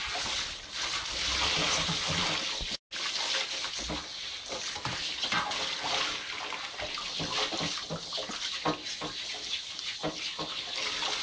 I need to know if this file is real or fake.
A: real